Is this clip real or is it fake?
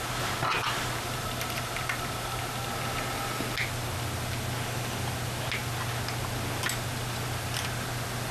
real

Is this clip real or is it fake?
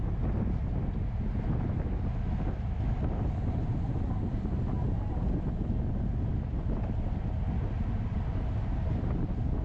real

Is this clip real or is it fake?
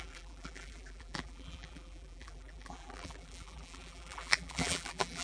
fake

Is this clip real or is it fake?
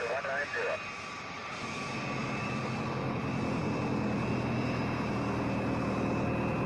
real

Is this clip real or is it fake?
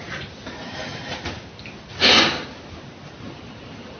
real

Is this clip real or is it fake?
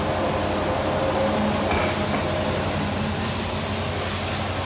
real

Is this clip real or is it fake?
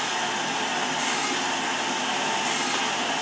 real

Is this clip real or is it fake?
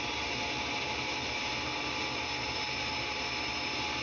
fake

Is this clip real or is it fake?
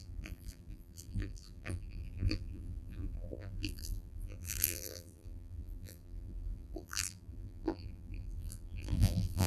fake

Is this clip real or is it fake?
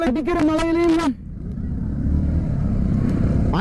fake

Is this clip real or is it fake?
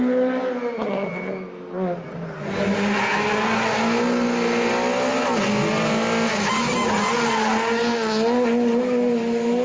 real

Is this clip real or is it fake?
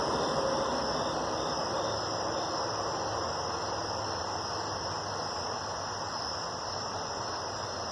real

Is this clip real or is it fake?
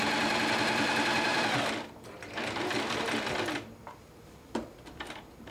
fake